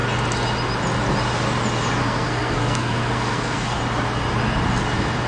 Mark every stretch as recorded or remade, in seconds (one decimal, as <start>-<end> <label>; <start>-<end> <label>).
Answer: 0.0-2.0 recorded; 2.0-3.8 remade; 3.8-5.3 recorded